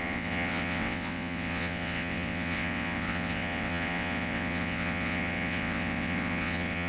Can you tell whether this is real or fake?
fake